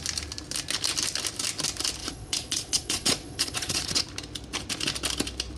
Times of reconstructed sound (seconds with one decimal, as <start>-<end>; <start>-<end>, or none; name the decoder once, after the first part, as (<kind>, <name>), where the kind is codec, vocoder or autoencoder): 2.0-4.0 (vocoder, Vocos)

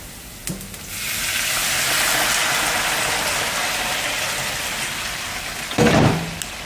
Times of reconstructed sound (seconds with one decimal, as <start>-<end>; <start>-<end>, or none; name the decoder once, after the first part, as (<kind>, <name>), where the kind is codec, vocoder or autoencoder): none

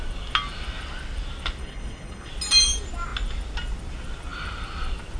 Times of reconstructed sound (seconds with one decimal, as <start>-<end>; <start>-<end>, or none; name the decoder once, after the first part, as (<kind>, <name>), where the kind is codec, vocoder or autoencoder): 1.6-2.3 (codec, HILCodec)

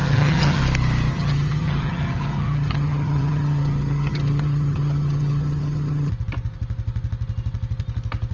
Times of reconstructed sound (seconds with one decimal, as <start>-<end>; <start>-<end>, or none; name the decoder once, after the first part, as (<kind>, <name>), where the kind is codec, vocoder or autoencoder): 0.0-0.6 (vocoder, HiFi-GAN); 1.1-6.1

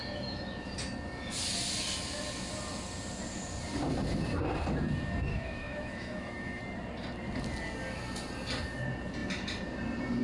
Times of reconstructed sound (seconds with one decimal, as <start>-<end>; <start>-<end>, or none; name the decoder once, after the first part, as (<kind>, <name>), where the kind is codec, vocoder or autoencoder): 5.3-6.6 (autoencoder, DAC-VAE)

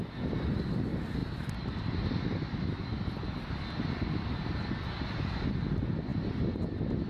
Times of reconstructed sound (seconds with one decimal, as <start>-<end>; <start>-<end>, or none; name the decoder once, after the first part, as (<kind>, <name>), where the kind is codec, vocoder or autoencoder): none

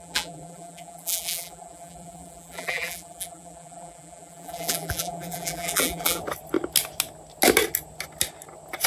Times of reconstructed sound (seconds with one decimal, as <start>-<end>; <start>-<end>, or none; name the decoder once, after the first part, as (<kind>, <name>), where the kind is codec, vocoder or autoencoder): 0.0-6.2 (vocoder, BigVGAN v2)